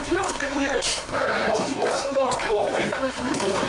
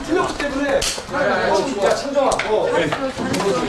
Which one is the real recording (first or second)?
second